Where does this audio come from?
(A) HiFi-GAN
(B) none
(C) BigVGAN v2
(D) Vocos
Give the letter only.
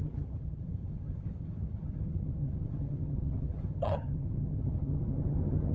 A